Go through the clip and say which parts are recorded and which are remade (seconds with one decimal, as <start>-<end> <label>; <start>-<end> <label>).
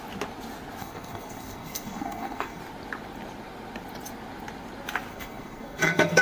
0.0-0.8 recorded; 0.8-2.6 remade; 2.6-5.1 recorded; 5.1-6.2 remade